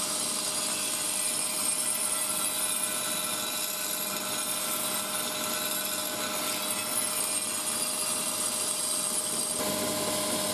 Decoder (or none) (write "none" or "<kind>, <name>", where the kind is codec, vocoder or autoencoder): none